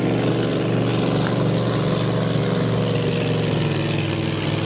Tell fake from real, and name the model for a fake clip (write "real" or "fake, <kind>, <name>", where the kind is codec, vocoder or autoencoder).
real